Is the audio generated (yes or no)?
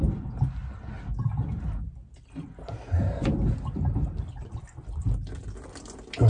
no